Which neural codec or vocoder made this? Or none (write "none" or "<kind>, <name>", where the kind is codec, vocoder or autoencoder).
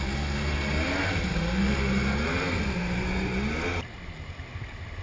none